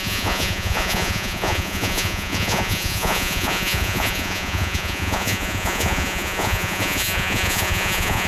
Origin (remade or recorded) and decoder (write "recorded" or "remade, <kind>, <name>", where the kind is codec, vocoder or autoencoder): remade, vocoder, Vocos